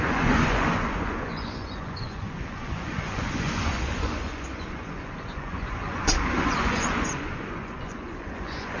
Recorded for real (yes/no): no